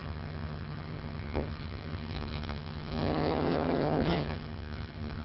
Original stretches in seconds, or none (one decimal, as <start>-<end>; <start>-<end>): none